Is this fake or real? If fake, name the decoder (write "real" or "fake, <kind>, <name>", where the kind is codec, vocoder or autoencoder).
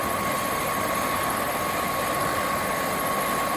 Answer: real